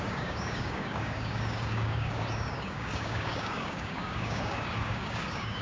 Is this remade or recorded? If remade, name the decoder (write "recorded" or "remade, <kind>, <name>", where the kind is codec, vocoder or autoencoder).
remade, codec, DAC